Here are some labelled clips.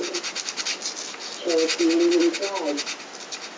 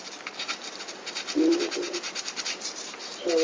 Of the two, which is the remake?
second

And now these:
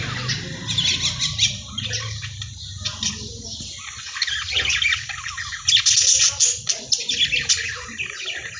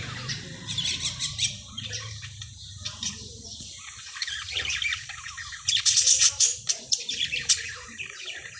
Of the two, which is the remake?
second